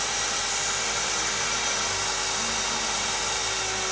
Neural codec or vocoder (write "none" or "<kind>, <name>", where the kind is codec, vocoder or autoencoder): none